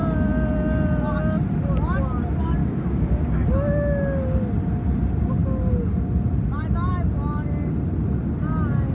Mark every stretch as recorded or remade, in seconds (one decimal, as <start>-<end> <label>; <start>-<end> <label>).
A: 0.0-2.6 recorded; 2.6-3.5 remade; 3.5-8.9 recorded